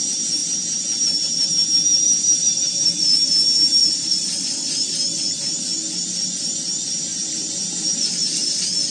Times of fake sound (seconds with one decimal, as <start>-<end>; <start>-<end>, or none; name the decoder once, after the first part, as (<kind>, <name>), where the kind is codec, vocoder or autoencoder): 3.8-4.4 (vocoder, BigVGAN v2)